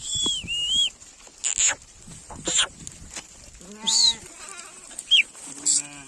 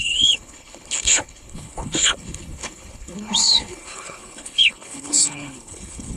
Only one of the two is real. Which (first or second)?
first